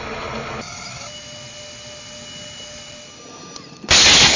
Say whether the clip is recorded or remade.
recorded